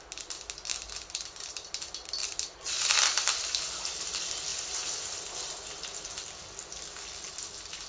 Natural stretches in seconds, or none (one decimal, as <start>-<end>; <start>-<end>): 0.0-0.7; 1.7-2.2; 3.4-4.5; 6.1-7.9